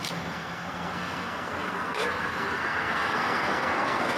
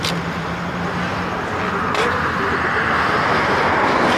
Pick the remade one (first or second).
first